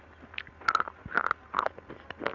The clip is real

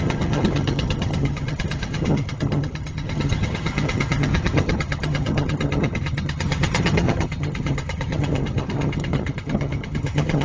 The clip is fake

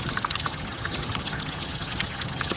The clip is fake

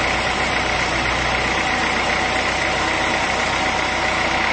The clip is real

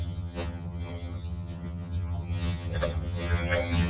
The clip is fake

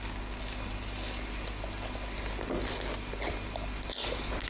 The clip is real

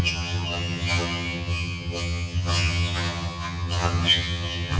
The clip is fake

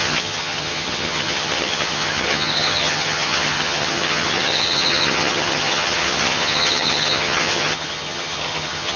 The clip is fake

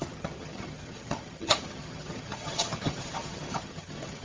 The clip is fake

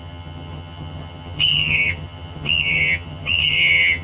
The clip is fake